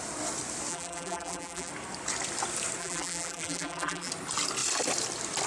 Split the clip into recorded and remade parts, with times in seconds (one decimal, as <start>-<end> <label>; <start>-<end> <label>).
0.0-0.7 recorded; 0.7-1.7 remade; 1.7-2.8 recorded; 2.8-4.1 remade; 4.1-5.5 recorded